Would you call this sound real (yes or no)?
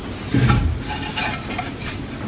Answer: yes